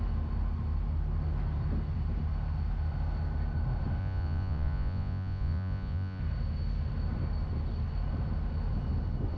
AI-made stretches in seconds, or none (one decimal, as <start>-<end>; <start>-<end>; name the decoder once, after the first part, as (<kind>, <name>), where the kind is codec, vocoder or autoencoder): 4.0-6.2 (vocoder, Vocos)